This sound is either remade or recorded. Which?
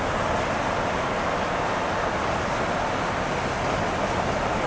recorded